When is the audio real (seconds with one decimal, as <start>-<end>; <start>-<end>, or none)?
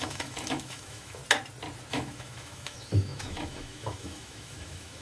1.2-1.9